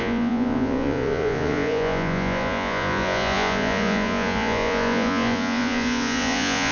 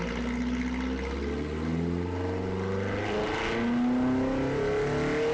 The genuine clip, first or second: second